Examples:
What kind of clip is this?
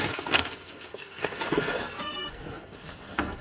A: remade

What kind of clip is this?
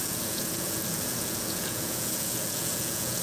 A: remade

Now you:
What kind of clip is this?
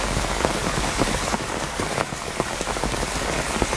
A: remade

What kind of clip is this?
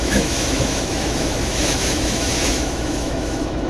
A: remade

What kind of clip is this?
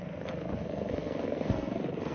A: remade